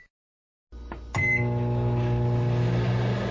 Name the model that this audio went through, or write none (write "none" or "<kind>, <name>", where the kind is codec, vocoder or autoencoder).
none